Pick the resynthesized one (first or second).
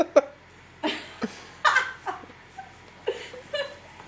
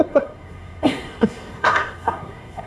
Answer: second